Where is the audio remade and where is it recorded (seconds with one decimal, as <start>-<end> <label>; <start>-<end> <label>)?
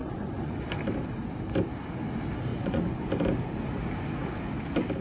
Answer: 0.0-0.7 remade; 0.7-2.5 recorded; 2.5-3.1 remade; 3.1-5.0 recorded